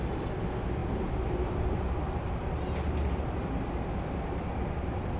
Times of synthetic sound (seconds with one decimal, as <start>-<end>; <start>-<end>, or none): 0.0-5.2